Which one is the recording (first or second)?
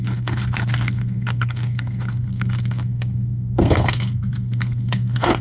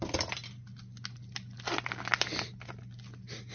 second